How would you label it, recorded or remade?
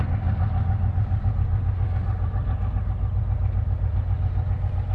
recorded